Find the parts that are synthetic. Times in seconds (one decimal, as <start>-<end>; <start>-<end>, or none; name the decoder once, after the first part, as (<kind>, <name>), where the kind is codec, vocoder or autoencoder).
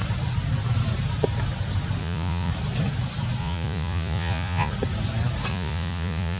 2.0-2.5 (vocoder, Vocos); 3.4-4.7; 5.5-6.4